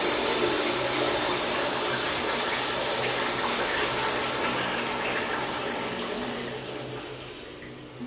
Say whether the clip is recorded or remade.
recorded